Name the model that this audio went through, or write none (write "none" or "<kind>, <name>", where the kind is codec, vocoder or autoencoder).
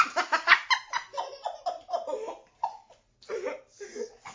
none